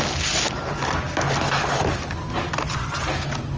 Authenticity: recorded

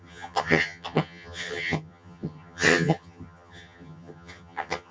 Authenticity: remade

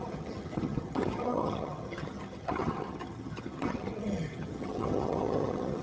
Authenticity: remade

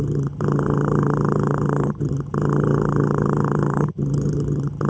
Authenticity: remade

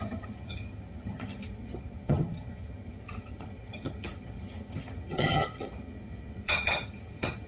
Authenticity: remade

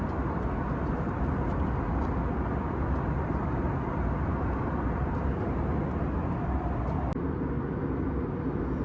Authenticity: recorded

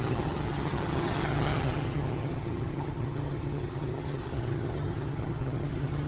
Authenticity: remade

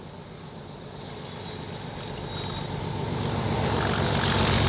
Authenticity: recorded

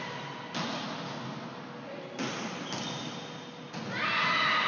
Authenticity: recorded